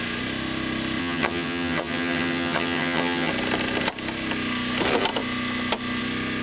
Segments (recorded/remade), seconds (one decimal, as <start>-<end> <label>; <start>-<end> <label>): 0.0-1.0 recorded; 1.0-3.3 remade; 3.3-6.4 recorded